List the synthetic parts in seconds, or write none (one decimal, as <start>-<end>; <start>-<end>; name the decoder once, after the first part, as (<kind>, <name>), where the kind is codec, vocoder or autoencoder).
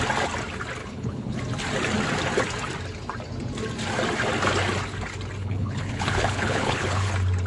0.8-1.4 (codec, HILCodec); 5.4-7.1